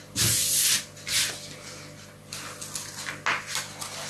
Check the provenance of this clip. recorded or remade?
recorded